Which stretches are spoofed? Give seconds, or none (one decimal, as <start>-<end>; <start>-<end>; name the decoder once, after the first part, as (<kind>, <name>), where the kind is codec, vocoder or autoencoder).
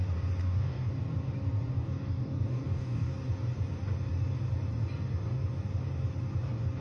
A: 0.4-0.9 (codec, DAC); 1.8-3.1